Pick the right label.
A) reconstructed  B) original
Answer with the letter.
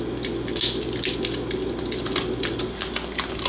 B